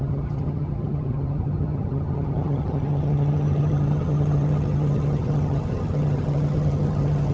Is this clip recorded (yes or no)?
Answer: no